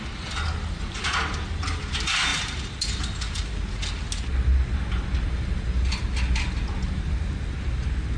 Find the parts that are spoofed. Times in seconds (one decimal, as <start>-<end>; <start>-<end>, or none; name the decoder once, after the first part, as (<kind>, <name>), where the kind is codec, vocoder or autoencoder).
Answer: 2.3-2.8 (vocoder, BigVGAN v2)